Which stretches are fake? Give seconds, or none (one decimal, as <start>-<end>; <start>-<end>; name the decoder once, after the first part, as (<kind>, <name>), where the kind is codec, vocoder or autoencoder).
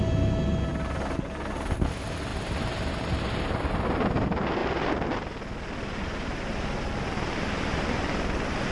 none